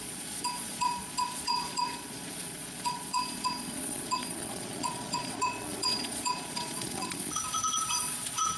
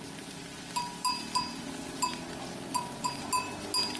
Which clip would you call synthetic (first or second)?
first